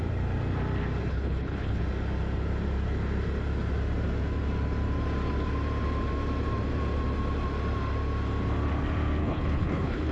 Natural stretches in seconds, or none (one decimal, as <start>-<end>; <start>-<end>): 0.0-1.1; 1.8-9.2